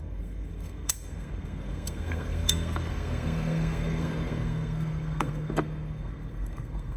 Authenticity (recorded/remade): remade